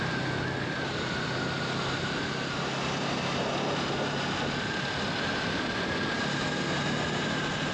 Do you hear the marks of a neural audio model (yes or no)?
no